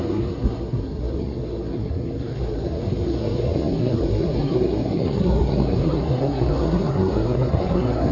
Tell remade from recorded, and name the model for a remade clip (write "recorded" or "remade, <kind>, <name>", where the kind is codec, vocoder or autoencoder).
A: remade, codec, SNAC